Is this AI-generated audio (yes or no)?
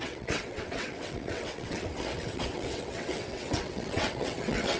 yes